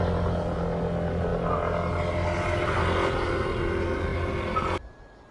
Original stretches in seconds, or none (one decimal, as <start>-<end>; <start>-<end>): 0.0-5.3